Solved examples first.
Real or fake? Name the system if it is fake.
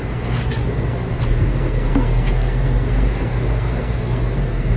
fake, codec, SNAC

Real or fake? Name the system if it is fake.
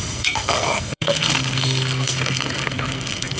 fake, codec, SNAC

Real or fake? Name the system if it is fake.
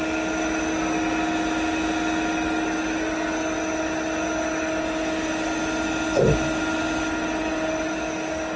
real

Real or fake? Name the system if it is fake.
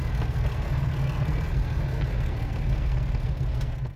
fake, codec, SNAC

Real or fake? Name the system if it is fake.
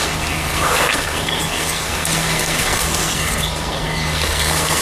fake, codec, SNAC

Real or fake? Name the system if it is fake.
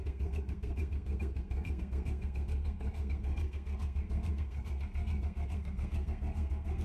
fake, codec, SNAC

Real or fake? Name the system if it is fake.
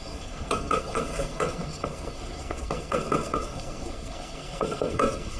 fake, codec, SNAC